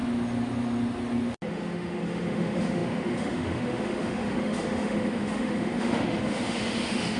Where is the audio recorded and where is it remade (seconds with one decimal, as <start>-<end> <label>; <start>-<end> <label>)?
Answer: 0.0-1.5 recorded; 1.5-7.2 remade